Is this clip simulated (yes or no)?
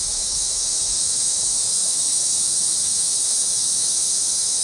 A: yes